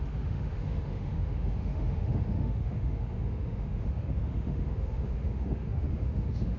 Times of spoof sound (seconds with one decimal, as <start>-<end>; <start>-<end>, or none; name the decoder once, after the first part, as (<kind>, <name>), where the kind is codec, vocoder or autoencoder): 0.0-6.6 (autoencoder, DAC-VAE)